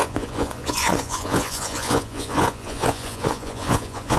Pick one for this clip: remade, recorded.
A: remade